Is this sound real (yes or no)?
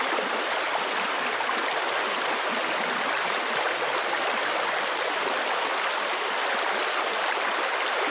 yes